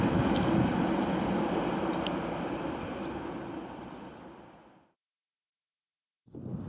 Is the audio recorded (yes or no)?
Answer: yes